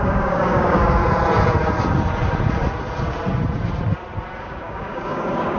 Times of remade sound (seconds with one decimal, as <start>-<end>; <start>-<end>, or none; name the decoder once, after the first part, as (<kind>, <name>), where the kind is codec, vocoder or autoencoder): 0.0-1.0 (codec, DAC); 4.4-5.6